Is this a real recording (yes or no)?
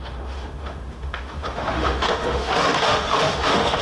no